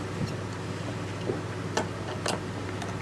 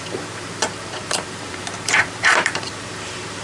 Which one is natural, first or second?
first